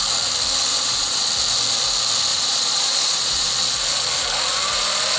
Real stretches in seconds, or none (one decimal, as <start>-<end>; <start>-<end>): 0.0-0.7; 1.3-2.3; 3.5-5.2